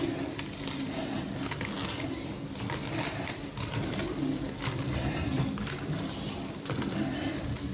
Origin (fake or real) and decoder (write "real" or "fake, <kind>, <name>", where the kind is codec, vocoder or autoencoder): real